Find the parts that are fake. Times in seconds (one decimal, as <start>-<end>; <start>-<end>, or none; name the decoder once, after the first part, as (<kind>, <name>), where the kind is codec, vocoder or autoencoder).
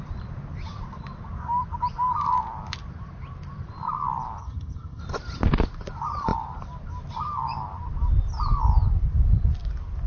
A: 4.4-5.0 (vocoder, HiFi-GAN)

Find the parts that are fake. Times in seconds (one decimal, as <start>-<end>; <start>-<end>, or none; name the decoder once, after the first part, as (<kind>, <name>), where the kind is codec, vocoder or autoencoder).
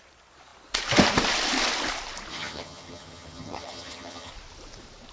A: 2.3-4.3 (vocoder, HiFi-GAN)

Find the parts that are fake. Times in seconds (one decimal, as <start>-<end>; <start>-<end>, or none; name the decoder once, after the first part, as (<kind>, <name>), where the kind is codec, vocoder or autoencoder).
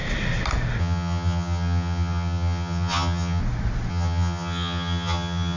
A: 0.8-3.4 (vocoder, HiFi-GAN); 3.9-5.6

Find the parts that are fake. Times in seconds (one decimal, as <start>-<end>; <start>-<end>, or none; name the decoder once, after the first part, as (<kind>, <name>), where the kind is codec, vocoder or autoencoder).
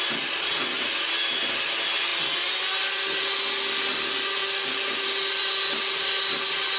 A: none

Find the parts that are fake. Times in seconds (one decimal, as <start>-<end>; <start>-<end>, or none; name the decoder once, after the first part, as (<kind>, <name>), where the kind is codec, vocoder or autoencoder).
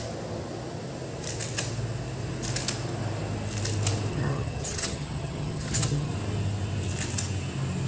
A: 4.1-6.1 (vocoder, HiFi-GAN)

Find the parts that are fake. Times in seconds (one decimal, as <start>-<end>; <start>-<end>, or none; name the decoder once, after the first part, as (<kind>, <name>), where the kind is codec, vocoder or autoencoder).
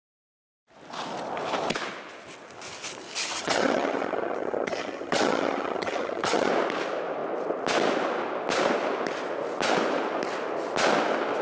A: 3.2-6.5 (vocoder, HiFi-GAN)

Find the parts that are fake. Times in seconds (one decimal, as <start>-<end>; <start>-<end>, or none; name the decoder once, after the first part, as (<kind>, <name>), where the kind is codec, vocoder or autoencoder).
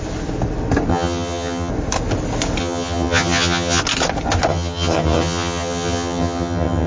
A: 0.9-1.7 (vocoder, HiFi-GAN); 2.6-3.8; 4.5-6.9